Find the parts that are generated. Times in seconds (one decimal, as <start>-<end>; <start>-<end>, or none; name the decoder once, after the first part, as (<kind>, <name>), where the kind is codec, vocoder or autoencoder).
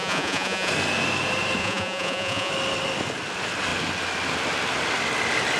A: 0.0-0.7 (vocoder, Vocos); 1.6-2.5